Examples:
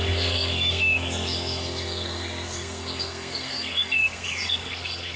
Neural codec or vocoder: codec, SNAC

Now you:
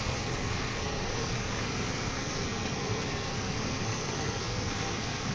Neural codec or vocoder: codec, SNAC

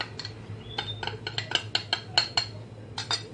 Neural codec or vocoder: none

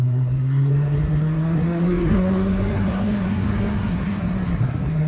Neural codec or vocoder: codec, SNAC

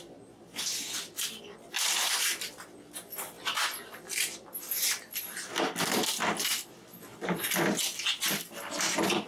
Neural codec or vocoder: none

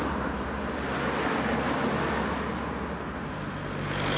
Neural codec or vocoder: none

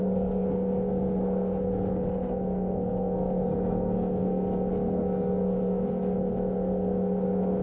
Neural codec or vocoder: codec, SNAC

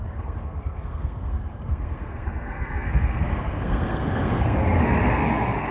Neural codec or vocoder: codec, SNAC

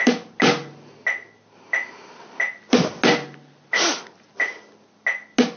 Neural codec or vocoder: none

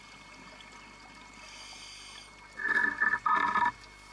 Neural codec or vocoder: none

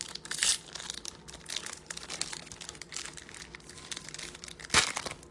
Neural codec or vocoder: none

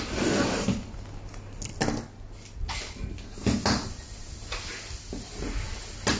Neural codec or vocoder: none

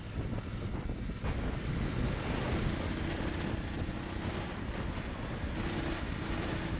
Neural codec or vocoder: none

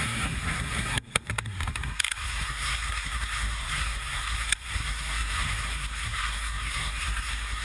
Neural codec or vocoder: codec, SNAC